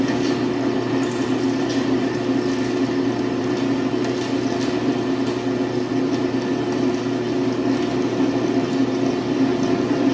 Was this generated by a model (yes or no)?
no